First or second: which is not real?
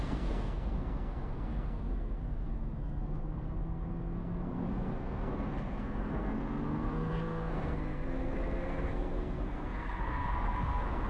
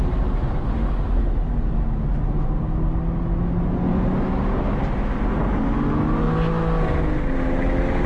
first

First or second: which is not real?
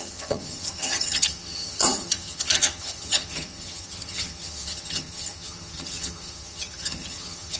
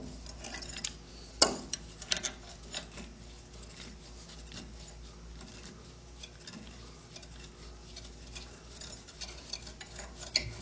first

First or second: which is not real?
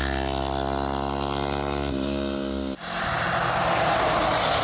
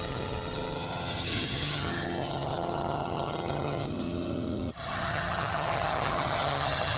second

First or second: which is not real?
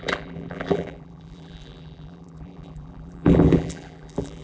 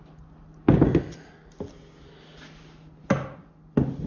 first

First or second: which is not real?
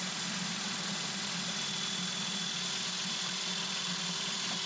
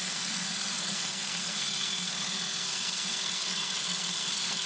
second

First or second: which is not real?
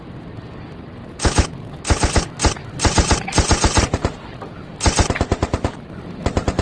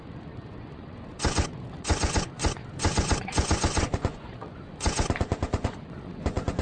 second